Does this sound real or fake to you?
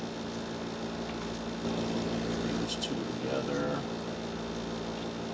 real